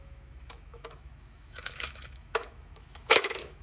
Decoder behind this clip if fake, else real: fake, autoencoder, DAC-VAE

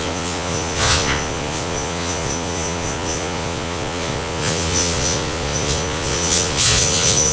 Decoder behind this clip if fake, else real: fake, vocoder, Vocos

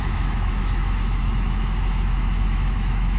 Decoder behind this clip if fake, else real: fake, autoencoder, DAC-VAE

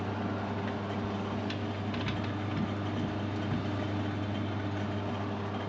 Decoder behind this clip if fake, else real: real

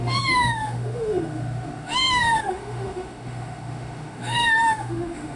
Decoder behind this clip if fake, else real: fake, autoencoder, DAC-VAE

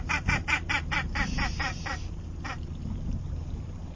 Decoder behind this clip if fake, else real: fake, vocoder, BigVGAN v2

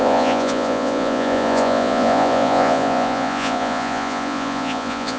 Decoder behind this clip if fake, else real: fake, vocoder, Vocos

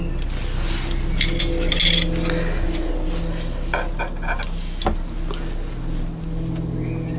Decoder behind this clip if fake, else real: real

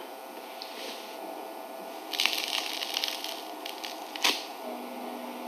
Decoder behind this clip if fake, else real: real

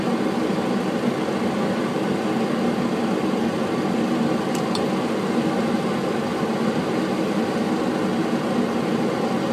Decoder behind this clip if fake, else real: real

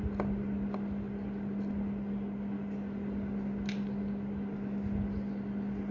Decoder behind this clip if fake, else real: real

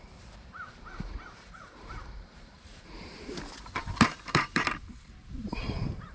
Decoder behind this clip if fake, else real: fake, vocoder, BigVGAN v2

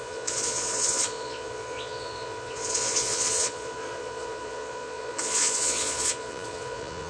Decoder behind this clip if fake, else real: fake, vocoder, Vocos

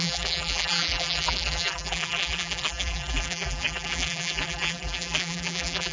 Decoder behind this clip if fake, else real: fake, vocoder, BigVGAN v2